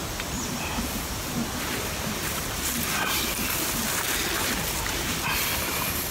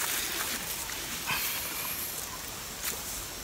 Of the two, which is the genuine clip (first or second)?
second